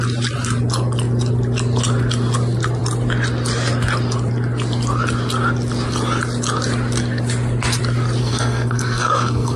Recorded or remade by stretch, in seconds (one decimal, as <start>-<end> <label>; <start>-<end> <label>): 0.0-8.2 recorded; 8.2-9.6 remade